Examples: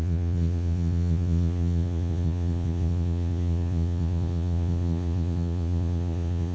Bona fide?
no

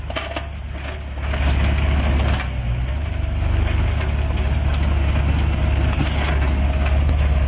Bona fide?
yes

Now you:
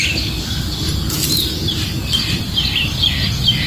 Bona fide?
yes